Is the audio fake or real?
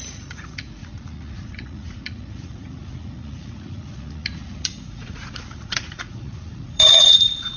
fake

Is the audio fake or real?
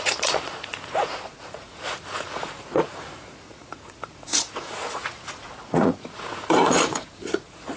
fake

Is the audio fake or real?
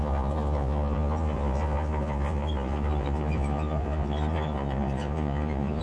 fake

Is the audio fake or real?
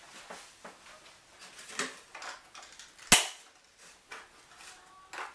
real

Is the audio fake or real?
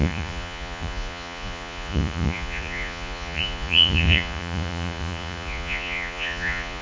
fake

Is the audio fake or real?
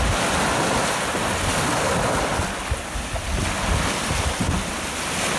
real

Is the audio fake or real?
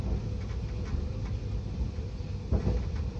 real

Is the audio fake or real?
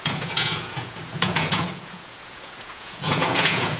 fake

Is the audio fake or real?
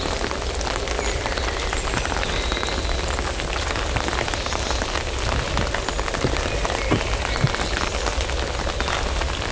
real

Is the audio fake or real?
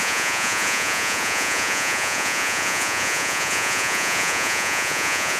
fake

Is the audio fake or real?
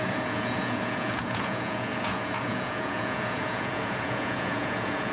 fake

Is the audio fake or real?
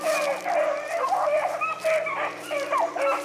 real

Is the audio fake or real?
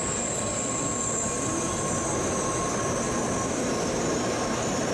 real